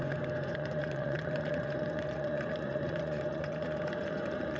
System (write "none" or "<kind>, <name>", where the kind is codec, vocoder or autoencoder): vocoder, Vocos